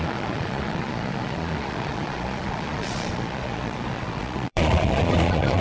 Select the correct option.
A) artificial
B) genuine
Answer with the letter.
A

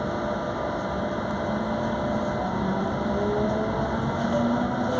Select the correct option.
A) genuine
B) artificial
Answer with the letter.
A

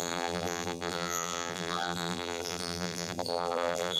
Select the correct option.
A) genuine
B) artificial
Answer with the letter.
B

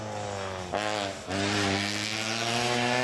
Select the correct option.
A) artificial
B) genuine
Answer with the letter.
B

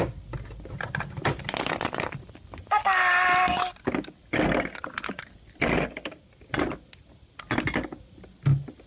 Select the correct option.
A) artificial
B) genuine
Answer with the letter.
B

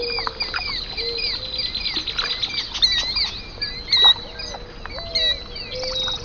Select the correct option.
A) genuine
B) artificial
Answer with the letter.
A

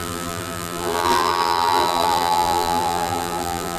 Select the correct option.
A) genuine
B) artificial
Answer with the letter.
B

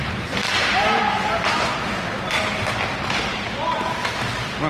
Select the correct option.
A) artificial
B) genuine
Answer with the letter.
B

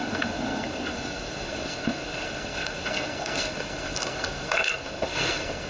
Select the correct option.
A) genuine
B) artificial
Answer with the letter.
B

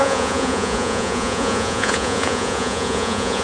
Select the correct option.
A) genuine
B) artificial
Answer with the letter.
B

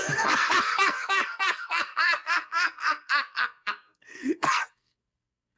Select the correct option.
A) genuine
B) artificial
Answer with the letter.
B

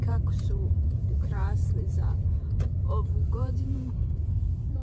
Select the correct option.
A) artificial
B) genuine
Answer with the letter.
A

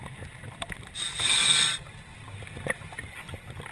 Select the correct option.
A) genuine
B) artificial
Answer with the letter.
A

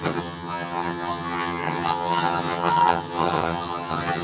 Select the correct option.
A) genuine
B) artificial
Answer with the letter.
B